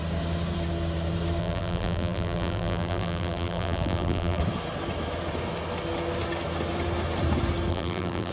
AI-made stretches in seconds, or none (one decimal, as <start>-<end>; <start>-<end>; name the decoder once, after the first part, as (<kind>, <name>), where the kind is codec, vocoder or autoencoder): 1.4-4.4 (vocoder, BigVGAN v2); 7.7-8.3